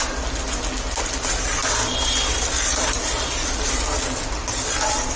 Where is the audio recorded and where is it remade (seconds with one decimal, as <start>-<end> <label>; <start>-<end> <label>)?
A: 0.0-5.2 recorded